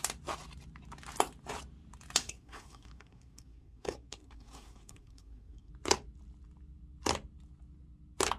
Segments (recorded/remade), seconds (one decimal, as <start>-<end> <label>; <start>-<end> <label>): 0.0-2.2 recorded; 2.2-5.7 remade; 5.7-8.4 recorded